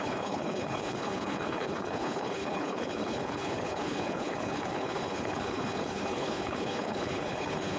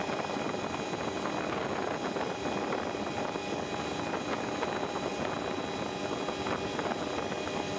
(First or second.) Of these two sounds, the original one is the second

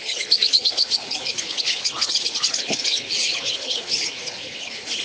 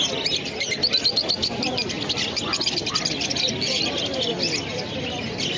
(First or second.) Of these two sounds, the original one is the second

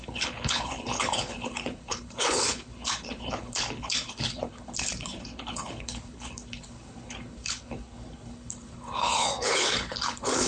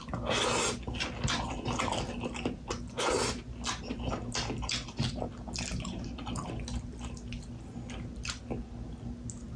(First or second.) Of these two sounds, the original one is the second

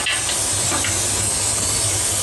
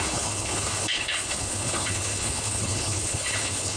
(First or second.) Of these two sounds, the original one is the first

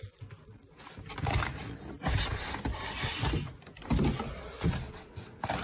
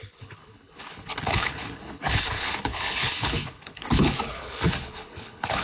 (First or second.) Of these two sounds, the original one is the first